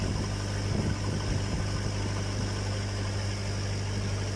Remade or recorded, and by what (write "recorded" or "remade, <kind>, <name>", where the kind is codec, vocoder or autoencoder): recorded